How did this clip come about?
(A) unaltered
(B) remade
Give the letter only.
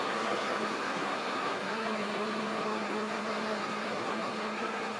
B